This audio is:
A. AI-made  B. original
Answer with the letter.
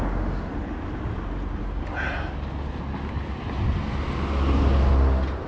B